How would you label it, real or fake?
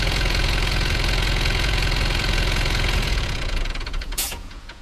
fake